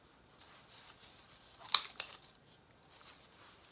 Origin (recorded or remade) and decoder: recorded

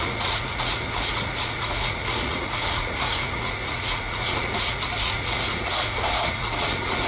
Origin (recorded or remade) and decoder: remade, vocoder, Vocos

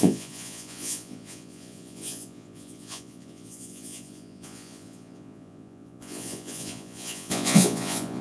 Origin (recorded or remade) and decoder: remade, vocoder, Vocos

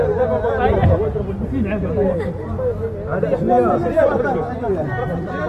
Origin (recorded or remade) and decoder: recorded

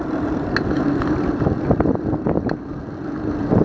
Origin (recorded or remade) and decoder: recorded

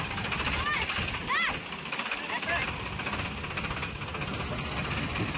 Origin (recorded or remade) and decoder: recorded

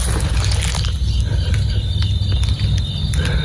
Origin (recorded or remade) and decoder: recorded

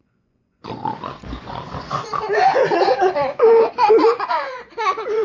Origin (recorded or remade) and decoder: remade, vocoder, Vocos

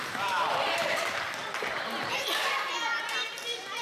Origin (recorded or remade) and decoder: recorded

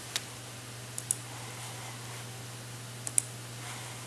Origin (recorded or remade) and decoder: recorded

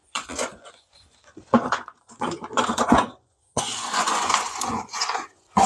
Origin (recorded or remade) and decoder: remade, vocoder, Vocos